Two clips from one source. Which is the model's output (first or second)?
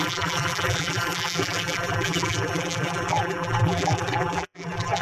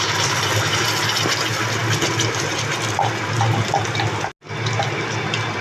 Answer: first